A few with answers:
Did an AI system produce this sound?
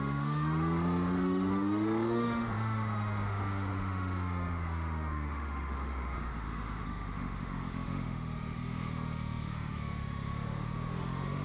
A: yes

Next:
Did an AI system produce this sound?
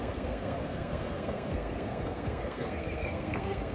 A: yes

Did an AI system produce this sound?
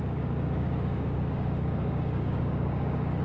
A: yes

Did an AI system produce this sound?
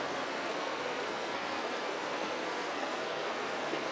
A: yes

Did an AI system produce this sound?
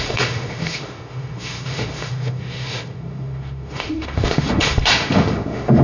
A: yes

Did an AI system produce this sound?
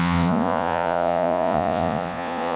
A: yes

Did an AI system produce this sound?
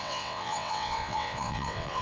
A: yes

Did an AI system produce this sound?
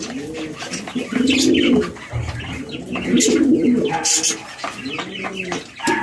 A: no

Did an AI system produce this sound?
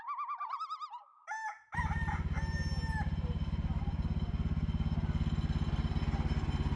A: no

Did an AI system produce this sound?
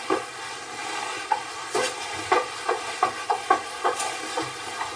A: no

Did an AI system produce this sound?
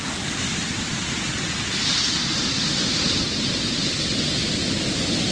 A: no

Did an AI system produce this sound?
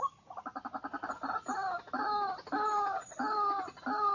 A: no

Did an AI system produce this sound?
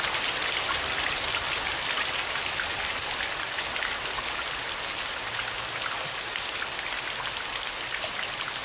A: no